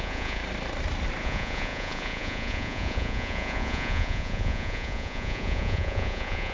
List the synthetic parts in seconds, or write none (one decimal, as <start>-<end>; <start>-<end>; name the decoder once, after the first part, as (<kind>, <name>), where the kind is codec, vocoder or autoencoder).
0.0-0.4 (vocoder, Vocos); 1.2-6.5